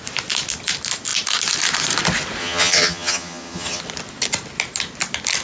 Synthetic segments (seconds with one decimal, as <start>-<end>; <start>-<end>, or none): 2.4-3.8